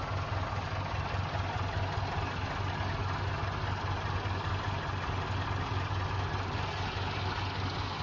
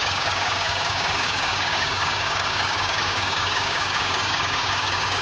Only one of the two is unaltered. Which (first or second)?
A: first